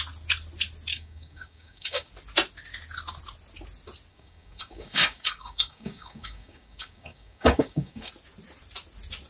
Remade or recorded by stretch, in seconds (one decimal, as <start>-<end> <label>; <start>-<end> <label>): 0.0-0.9 recorded; 0.9-2.1 remade; 2.1-4.1 recorded; 4.1-8.1 remade; 8.1-9.3 recorded